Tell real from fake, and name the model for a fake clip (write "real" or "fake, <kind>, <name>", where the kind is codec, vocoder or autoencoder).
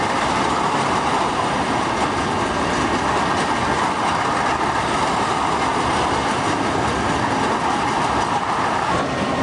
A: real